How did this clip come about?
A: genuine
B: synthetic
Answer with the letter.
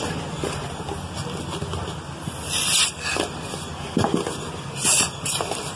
B